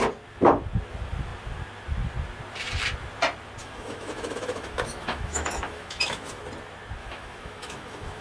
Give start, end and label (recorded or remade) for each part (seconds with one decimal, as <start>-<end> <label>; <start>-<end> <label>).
0.0-3.6 recorded; 3.6-6.4 remade; 6.4-7.0 recorded; 7.0-8.2 remade